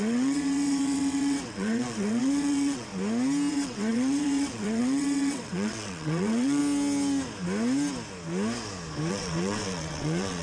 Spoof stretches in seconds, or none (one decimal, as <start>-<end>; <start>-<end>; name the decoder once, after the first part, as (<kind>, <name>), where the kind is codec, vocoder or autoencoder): 0.0-2.9 (vocoder, WaveNeXt); 3.5-6.6; 9.1-10.4